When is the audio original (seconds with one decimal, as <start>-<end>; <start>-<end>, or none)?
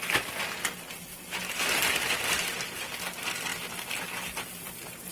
0.0-1.1; 1.8-5.1